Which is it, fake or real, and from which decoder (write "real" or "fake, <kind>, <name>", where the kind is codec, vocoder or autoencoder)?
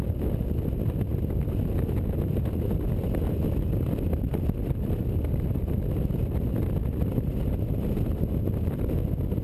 real